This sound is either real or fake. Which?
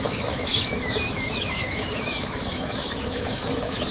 fake